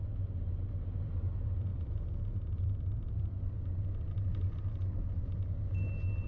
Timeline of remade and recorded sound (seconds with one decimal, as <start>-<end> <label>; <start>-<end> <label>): 0.0-1.7 recorded; 1.7-3.4 remade; 3.4-6.3 recorded